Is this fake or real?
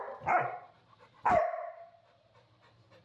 fake